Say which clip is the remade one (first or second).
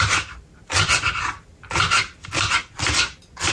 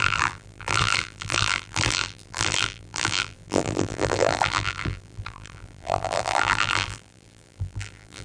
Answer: second